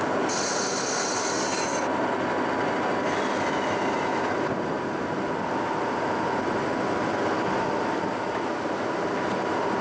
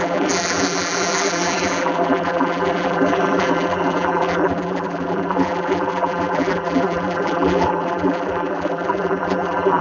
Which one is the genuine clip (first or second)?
first